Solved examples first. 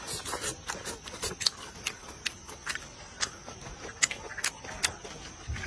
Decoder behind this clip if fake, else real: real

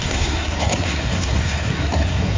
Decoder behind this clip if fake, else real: fake, codec, SNAC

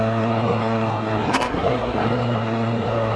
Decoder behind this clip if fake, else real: fake, codec, SNAC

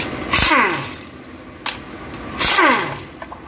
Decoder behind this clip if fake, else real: real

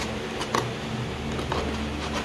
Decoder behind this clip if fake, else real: real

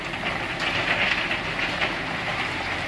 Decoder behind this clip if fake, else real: real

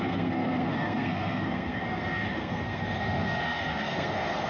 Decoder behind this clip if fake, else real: fake, codec, SNAC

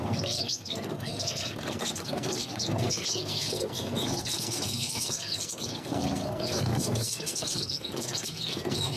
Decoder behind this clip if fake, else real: fake, codec, SNAC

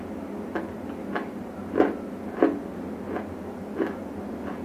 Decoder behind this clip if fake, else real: real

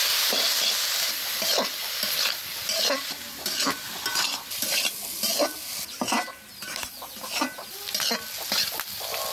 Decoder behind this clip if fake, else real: real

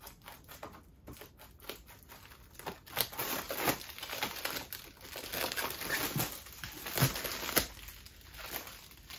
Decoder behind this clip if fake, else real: real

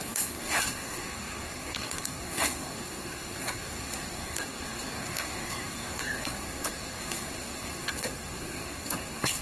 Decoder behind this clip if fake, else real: fake, codec, SNAC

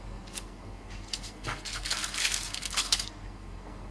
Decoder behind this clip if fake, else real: fake, codec, SNAC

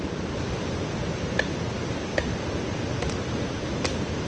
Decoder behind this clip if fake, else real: real